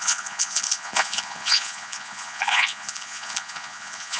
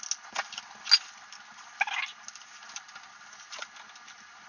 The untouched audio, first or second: second